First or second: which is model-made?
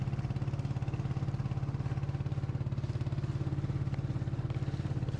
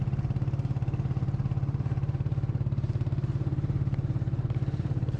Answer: second